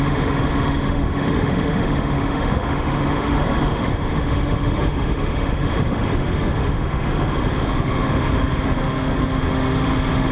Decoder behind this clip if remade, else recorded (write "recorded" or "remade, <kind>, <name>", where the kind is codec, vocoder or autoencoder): remade, autoencoder, DAC-VAE